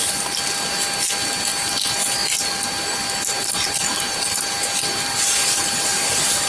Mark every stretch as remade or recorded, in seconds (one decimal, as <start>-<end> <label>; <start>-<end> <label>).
0.0-2.2 recorded; 2.2-5.2 remade; 5.2-5.9 recorded; 5.9-6.5 remade